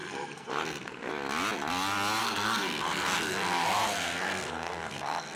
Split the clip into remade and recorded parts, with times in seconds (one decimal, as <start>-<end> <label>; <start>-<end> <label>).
0.0-1.1 remade; 1.1-2.2 recorded; 2.2-5.4 remade